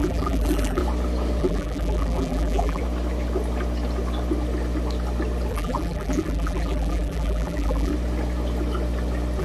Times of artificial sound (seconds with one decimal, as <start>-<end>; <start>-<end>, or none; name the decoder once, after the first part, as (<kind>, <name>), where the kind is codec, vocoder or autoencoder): 0.0-0.8 (vocoder, BigVGAN v2); 1.4-2.8; 5.5-7.9